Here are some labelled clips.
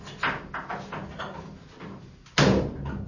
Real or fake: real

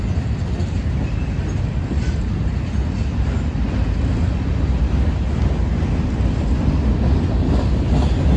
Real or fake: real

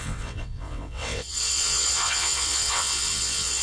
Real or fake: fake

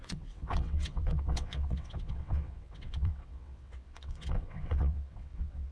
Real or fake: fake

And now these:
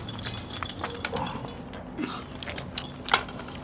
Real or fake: real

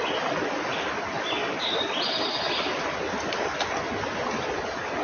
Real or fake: real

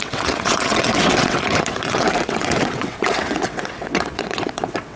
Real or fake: fake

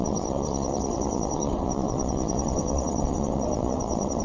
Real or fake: fake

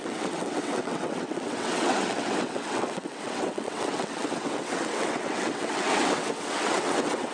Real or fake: fake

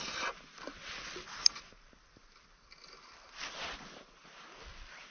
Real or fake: real